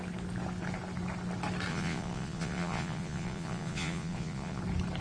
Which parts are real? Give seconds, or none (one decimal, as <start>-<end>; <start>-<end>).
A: 0.0-1.7; 4.6-5.0